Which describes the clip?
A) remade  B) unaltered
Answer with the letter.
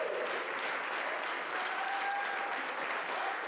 B